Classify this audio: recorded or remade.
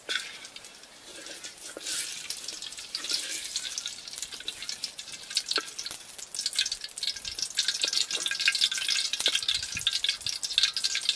recorded